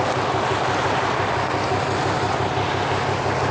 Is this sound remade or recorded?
recorded